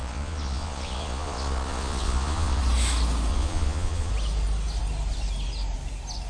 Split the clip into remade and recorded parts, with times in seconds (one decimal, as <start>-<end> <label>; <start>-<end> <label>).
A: 0.0-2.6 remade; 2.6-3.3 recorded; 3.3-4.1 remade; 4.1-6.3 recorded